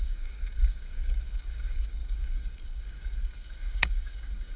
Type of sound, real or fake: fake